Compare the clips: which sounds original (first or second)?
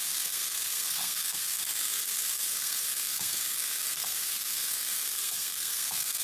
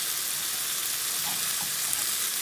second